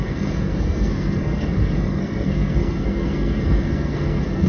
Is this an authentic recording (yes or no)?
no